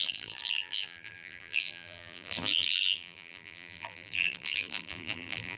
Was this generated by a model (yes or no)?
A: yes